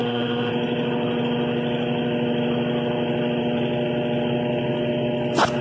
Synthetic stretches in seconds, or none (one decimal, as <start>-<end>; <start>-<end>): 0.0-0.5